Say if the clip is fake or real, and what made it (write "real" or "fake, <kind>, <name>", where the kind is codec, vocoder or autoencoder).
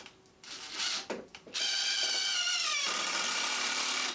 real